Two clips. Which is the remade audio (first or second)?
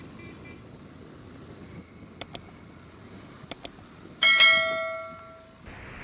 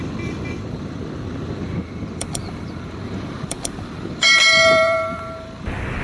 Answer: second